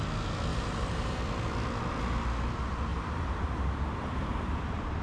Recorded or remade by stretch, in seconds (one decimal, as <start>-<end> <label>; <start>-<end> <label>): 0.0-0.5 recorded; 0.5-1.2 remade; 1.2-2.9 recorded; 2.9-4.5 remade; 4.5-5.0 recorded

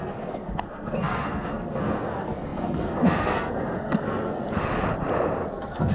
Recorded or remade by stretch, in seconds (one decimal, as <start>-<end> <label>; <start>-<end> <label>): 0.0-4.4 remade; 4.4-5.5 recorded; 5.5-5.9 remade

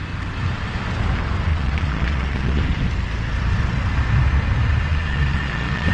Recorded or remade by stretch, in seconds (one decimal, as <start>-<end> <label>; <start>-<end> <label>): 0.0-1.5 recorded; 1.5-2.6 remade; 2.6-4.9 recorded; 4.9-5.9 remade

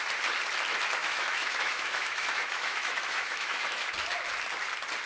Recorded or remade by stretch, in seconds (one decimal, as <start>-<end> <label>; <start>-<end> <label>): 0.0-1.0 recorded; 1.0-3.9 remade; 3.9-5.1 recorded

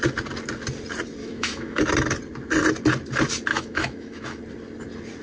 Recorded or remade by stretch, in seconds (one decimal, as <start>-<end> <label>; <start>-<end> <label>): 0.0-1.2 recorded; 1.2-1.8 remade; 1.8-3.5 recorded; 3.5-4.4 remade; 4.4-5.2 recorded

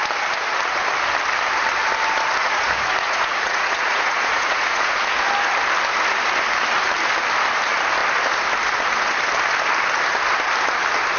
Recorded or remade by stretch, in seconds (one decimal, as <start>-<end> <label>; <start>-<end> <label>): 0.0-2.4 recorded; 2.4-5.0 remade; 5.0-11.2 recorded